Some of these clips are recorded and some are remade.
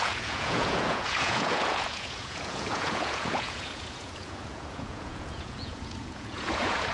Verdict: remade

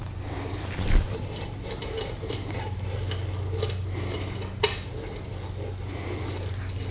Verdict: recorded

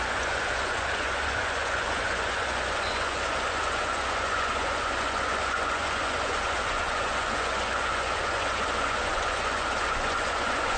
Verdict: remade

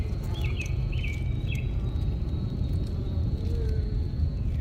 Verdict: remade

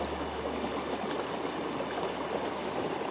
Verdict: recorded